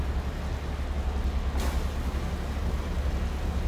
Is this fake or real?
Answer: real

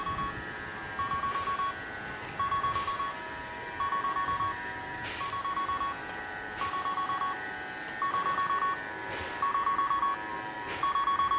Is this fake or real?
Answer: real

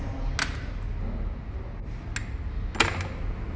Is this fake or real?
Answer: real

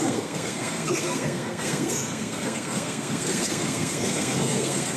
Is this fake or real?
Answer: fake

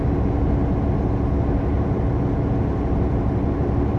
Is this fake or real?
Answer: real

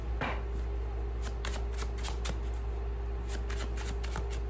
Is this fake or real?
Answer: real